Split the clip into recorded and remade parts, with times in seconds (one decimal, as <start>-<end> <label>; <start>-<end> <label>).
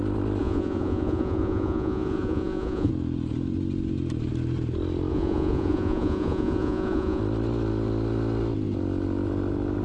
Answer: 0.0-0.4 recorded; 0.4-2.9 remade; 2.9-5.1 recorded; 5.1-7.2 remade; 7.2-9.8 recorded